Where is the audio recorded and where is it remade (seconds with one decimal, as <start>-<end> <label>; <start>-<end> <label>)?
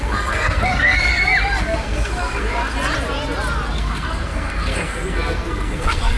0.0-1.1 remade; 1.1-1.6 recorded; 1.6-2.6 remade; 2.6-3.7 recorded; 3.7-6.2 remade